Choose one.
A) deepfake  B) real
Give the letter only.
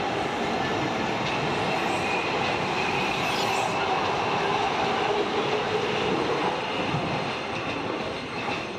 B